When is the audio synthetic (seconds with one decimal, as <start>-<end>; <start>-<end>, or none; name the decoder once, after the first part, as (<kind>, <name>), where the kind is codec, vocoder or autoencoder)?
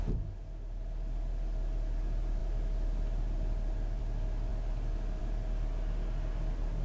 none